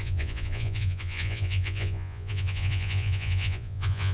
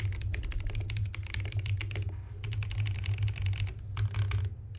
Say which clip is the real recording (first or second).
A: second